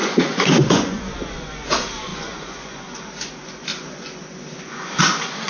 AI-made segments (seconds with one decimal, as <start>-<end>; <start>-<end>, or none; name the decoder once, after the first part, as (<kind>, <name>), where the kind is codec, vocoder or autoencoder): 0.0-5.5 (vocoder, Vocos)